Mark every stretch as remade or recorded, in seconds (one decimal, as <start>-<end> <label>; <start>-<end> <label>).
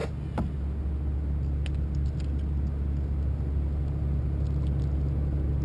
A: 0.0-5.6 recorded